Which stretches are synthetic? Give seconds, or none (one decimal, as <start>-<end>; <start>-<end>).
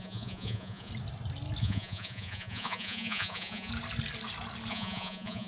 0.0-0.9; 1.6-3.7; 4.7-5.5